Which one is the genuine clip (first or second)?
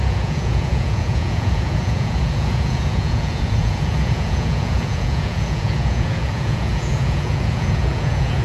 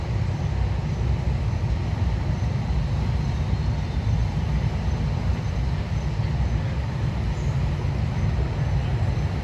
second